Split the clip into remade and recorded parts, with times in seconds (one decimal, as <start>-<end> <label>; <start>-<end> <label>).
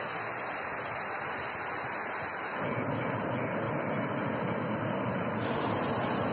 0.0-6.3 recorded